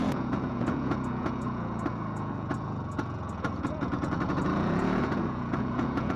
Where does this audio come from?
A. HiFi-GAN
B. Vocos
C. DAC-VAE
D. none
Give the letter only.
B